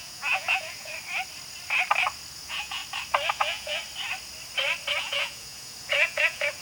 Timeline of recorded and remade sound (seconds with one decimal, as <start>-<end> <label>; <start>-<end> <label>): 0.0-0.9 remade; 0.9-2.3 recorded; 2.3-2.8 remade; 2.8-3.3 recorded; 3.3-3.8 remade; 3.8-5.0 recorded; 5.0-6.6 remade